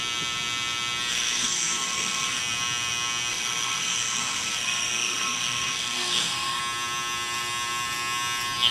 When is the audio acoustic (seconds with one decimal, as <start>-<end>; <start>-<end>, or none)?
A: 0.0-1.1; 2.4-3.3; 6.6-8.7